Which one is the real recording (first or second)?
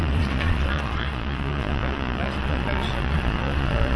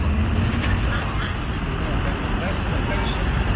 second